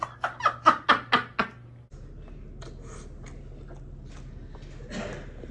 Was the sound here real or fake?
real